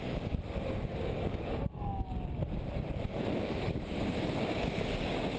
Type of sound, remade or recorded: remade